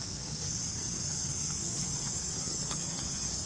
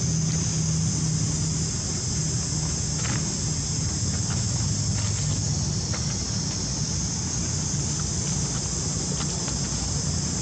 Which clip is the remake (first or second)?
first